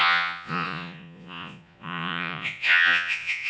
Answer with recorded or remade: remade